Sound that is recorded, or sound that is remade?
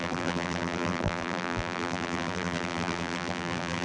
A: remade